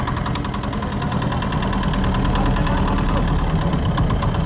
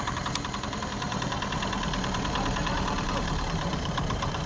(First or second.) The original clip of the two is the first